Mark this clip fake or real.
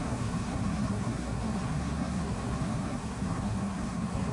fake